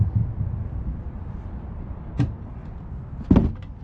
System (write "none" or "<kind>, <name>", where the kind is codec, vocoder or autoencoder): none